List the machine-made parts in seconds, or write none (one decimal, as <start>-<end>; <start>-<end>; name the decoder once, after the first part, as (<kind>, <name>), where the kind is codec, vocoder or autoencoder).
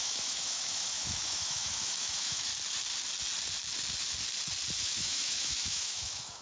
0.0-2.5 (autoencoder, DAC-VAE); 4.8-6.4